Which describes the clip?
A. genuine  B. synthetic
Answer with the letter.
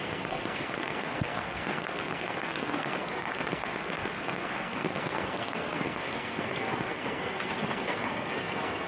B